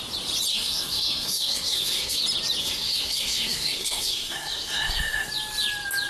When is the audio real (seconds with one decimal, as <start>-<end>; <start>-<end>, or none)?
0.0-0.5; 2.2-2.6; 5.3-6.1